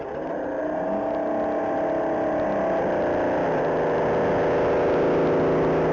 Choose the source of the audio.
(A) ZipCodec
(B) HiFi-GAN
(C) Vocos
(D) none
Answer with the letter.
D